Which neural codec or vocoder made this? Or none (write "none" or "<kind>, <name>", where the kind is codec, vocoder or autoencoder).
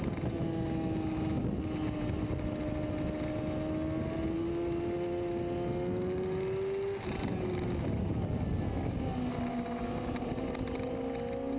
none